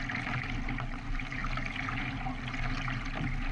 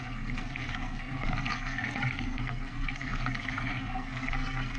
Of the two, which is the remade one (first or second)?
second